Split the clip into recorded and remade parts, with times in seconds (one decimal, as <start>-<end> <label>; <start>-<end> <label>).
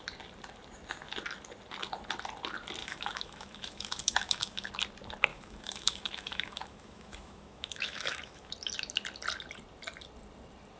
0.0-2.8 recorded; 2.8-4.7 remade; 4.7-5.3 recorded; 5.3-8.5 remade; 8.5-10.8 recorded